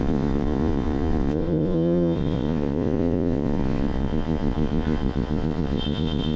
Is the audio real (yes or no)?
no